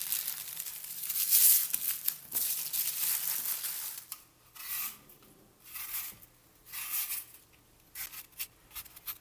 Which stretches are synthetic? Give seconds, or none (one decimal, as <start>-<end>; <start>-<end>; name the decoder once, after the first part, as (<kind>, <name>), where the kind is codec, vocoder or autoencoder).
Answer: 1.6-5.8 (vocoder, BigVGAN v2)